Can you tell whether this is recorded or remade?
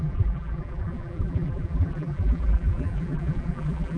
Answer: remade